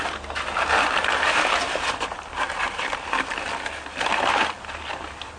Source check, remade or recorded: recorded